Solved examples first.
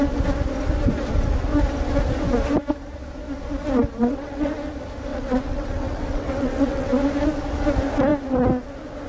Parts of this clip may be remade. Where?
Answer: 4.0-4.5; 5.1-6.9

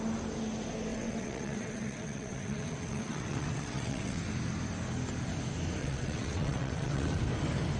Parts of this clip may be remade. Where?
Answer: 0.9-4.2; 5.8-7.2

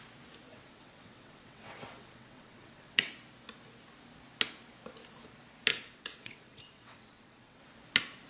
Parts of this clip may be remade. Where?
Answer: 0.5-3.1; 5.7-7.6